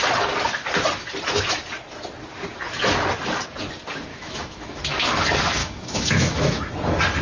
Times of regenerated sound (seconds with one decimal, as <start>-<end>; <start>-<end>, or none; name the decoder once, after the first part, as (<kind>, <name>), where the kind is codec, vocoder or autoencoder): 4.1-4.8 (autoencoder, DAC-VAE); 5.6-6.7